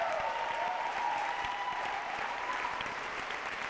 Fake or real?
fake